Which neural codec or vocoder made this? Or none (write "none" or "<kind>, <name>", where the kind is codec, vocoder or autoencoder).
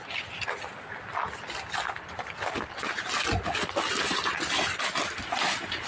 none